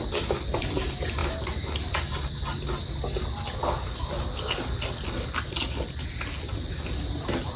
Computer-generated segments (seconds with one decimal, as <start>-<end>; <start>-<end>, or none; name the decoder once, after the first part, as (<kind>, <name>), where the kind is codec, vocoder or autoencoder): none